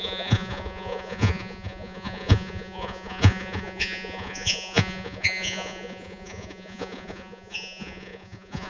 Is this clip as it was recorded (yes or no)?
no